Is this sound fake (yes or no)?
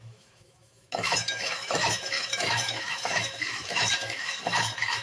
yes